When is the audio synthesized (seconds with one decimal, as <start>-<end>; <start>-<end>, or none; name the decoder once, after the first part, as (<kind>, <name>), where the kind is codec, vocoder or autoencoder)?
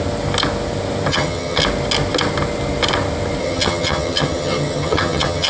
1.1-1.6 (vocoder, HiFi-GAN); 3.4-5.5